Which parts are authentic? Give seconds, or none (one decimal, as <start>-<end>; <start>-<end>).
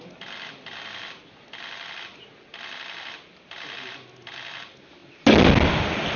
0.0-6.2